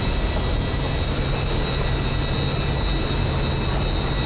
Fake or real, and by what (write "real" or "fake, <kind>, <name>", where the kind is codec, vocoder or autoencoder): real